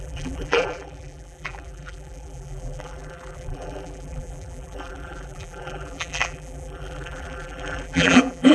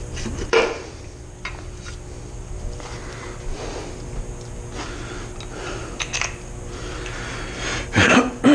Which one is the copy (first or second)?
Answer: first